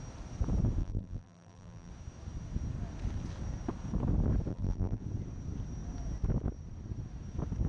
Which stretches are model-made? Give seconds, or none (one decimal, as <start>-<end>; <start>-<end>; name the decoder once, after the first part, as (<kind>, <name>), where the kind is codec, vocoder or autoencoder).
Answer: 0.8-1.9 (vocoder, BigVGAN v2); 4.5-5.0